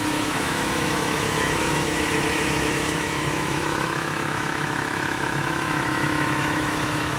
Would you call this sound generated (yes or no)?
yes